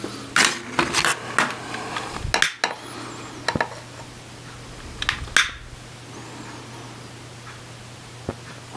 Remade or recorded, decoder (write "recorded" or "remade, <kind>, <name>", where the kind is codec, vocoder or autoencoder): recorded